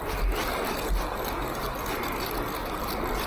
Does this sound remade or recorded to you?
recorded